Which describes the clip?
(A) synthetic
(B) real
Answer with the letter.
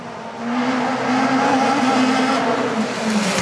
B